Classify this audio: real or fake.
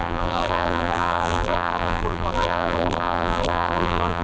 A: fake